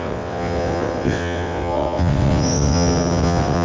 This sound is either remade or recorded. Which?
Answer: remade